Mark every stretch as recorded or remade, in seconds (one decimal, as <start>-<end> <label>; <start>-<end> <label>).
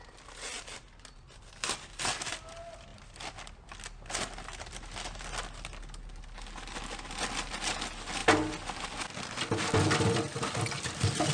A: 0.0-11.3 recorded